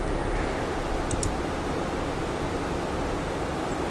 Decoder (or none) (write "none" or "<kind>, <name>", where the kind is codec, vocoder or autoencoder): none